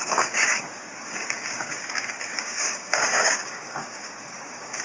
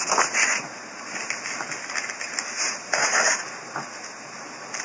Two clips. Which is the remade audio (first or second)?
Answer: first